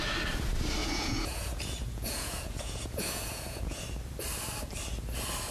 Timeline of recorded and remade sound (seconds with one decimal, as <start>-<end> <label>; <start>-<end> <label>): 0.0-0.8 recorded; 0.8-3.8 remade; 3.8-5.5 recorded